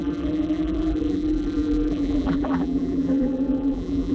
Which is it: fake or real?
fake